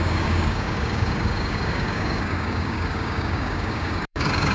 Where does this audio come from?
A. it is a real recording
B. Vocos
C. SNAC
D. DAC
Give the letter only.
D